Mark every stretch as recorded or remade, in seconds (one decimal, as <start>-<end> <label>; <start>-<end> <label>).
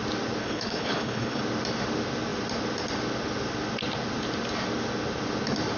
0.0-0.4 recorded; 0.4-1.4 remade; 1.4-5.8 recorded